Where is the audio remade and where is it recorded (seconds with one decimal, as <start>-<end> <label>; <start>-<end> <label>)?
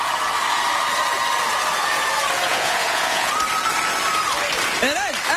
0.0-2.5 recorded; 2.5-3.3 remade; 3.3-5.4 recorded